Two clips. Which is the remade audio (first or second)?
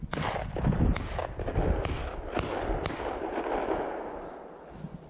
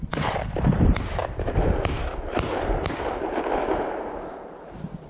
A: second